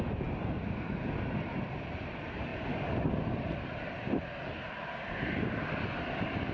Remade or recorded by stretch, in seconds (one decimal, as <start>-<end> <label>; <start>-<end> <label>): 0.0-6.5 recorded